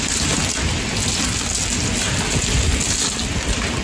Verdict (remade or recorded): recorded